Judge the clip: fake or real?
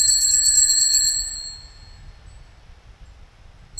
real